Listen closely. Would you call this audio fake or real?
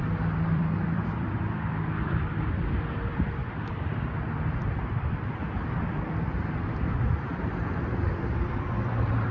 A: fake